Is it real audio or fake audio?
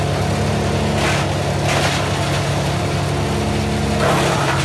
real